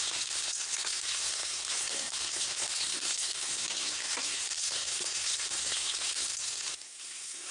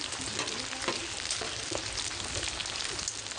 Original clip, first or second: second